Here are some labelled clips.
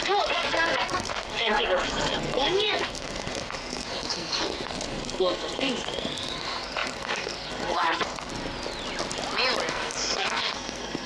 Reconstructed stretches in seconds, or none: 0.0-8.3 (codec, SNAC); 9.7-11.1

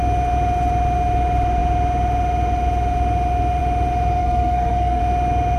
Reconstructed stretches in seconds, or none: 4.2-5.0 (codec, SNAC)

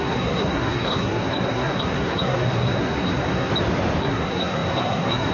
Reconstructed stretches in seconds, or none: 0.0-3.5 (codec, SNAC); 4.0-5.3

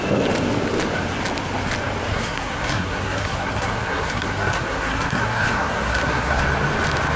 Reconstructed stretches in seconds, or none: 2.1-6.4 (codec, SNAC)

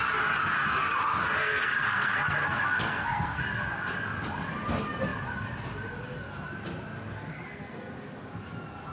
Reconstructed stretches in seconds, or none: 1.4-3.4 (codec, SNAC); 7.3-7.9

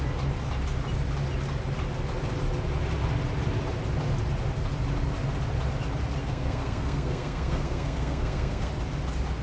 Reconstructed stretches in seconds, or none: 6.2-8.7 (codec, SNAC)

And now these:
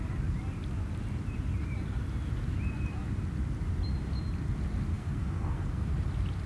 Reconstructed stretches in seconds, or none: 4.9-5.9 (codec, SNAC)